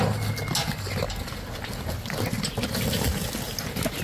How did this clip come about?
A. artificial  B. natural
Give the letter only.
B